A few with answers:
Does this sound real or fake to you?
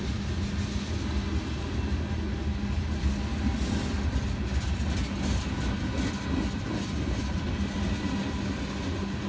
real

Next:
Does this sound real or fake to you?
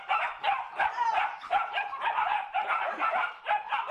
fake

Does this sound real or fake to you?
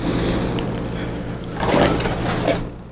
real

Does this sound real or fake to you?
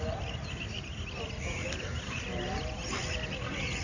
real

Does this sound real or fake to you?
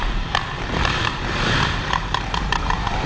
fake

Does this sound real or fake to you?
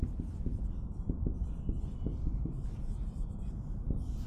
fake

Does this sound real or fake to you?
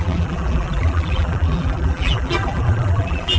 fake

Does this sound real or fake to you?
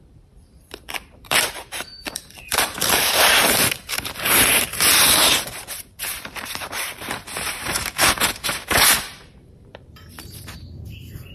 fake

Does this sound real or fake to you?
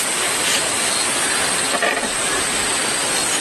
real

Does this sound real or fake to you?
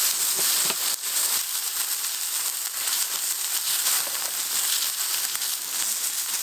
real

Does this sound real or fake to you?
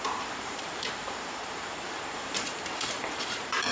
fake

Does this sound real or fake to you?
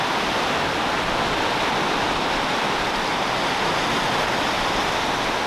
real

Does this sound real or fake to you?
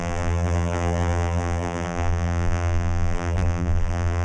fake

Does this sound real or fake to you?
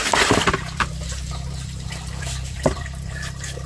fake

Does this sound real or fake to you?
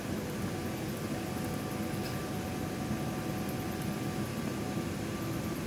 real